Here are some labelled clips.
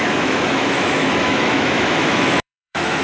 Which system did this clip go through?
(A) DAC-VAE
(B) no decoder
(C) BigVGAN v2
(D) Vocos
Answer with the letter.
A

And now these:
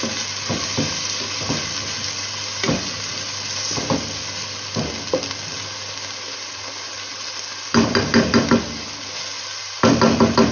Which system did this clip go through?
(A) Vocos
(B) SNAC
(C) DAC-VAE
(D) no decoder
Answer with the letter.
D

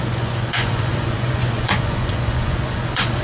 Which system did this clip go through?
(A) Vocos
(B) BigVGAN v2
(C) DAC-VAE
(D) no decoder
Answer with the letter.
A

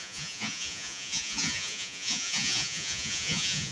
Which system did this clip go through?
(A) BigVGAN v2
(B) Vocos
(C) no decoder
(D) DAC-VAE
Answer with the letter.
B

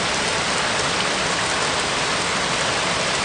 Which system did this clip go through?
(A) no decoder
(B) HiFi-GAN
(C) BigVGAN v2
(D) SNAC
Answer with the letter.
A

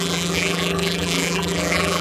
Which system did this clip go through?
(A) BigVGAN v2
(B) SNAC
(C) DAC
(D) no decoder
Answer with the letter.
A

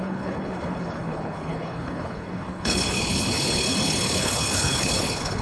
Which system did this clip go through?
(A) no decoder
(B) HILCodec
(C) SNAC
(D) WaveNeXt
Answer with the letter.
B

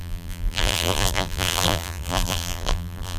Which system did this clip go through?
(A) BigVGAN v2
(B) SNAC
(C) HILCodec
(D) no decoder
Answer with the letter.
A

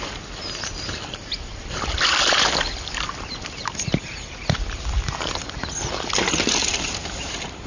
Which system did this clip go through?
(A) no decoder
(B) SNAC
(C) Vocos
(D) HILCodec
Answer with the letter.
A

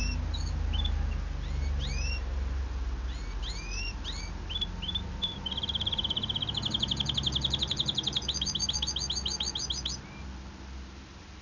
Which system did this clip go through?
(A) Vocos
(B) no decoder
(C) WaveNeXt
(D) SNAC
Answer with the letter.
B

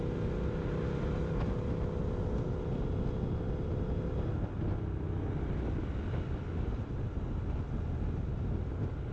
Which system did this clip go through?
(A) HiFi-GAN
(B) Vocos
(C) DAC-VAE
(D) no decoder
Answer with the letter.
D